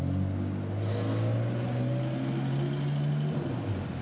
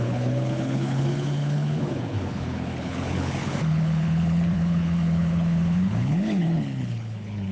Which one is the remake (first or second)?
second